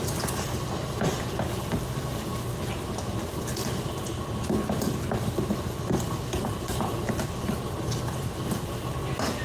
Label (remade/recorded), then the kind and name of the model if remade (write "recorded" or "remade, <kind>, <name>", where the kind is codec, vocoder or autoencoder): recorded